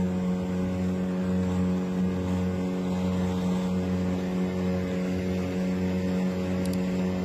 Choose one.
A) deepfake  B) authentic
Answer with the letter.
B